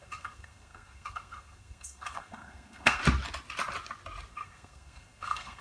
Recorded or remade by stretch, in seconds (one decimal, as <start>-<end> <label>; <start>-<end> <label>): 0.0-3.0 remade; 3.0-4.3 recorded; 4.3-5.6 remade